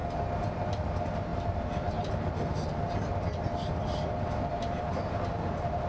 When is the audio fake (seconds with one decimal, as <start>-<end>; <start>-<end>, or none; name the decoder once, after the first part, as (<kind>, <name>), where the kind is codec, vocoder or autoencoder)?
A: 0.7-5.9 (vocoder, BigVGAN v2)